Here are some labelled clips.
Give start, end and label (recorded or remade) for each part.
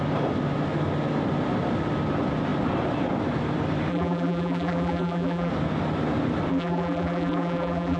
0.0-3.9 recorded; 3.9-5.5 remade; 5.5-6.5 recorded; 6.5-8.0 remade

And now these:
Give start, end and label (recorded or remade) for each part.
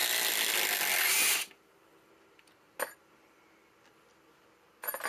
0.0-5.1 recorded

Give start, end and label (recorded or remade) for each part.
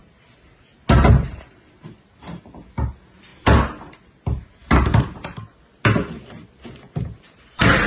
0.0-7.9 recorded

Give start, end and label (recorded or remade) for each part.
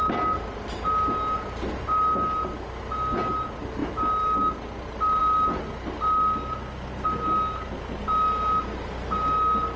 0.0-9.8 recorded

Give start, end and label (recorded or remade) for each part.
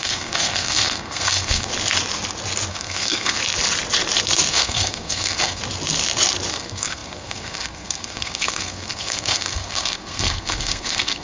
0.0-1.7 remade; 1.7-2.7 recorded; 2.7-3.4 remade; 3.4-4.5 recorded; 4.5-5.6 remade; 5.6-6.5 recorded; 6.5-11.2 remade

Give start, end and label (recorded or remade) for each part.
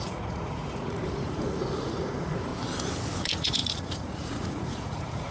0.0-2.5 remade; 2.5-3.2 recorded; 3.2-5.3 remade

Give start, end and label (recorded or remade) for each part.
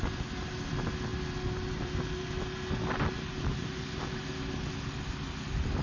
0.0-5.8 recorded